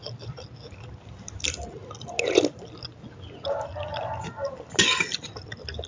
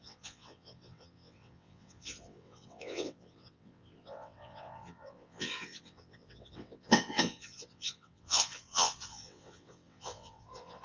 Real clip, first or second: first